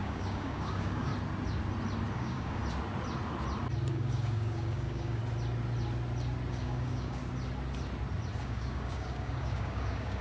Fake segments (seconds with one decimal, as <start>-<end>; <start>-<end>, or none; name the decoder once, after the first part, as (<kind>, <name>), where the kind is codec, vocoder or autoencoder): 0.0-1.1 (codec, DAC); 2.1-2.6; 3.9-5.2; 6.5-7.2; 8.4-10.2